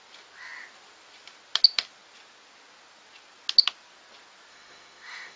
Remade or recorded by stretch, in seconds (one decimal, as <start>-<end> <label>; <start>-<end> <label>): 0.0-4.5 recorded; 4.5-5.4 remade